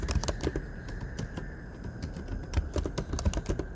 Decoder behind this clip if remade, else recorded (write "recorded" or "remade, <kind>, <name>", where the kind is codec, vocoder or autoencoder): recorded